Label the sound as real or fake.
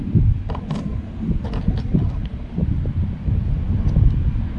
fake